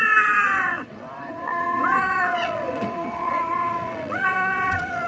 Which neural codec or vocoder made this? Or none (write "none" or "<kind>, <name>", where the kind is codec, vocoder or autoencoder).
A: vocoder, WaveNeXt